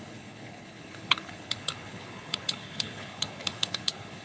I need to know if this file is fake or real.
fake